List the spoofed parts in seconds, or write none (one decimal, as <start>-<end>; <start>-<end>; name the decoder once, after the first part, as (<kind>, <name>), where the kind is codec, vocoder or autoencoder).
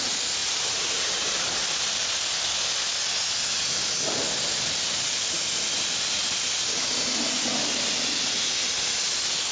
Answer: none